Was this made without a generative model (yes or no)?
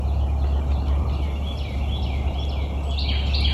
yes